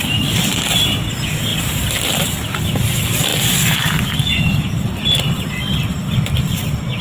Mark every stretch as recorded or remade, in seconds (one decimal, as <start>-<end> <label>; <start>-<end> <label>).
0.0-1.5 recorded; 1.5-2.6 remade; 2.6-3.3 recorded; 3.3-5.5 remade; 5.5-7.0 recorded